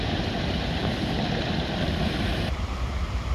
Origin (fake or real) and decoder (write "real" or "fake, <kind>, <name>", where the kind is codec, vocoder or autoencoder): fake, vocoder, BigVGAN v2